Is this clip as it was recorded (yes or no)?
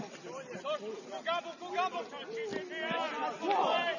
yes